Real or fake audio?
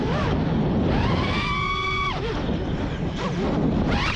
real